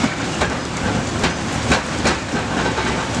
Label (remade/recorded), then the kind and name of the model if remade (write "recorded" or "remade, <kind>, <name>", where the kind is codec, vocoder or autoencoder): recorded